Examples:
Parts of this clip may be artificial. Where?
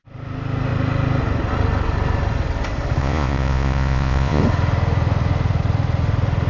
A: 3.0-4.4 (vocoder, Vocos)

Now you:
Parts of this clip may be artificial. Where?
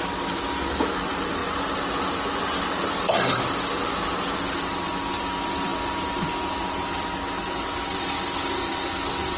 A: none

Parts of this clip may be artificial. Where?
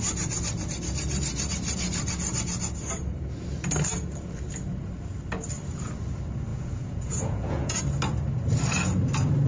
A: 6.5-7.8 (vocoder, Vocos)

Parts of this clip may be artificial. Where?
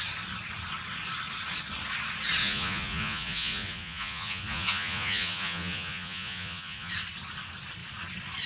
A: 2.4-6.9 (vocoder, Vocos)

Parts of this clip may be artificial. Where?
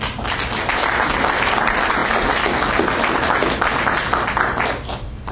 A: none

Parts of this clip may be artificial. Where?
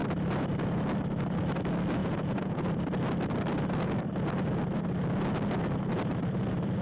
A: 2.0-2.7 (vocoder, Vocos)